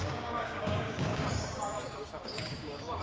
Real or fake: fake